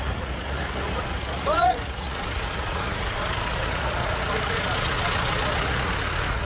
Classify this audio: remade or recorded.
remade